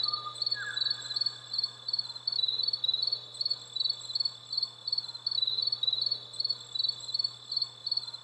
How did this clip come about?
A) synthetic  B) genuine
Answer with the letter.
B